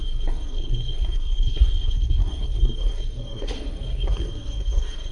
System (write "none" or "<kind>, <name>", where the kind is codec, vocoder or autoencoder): codec, SNAC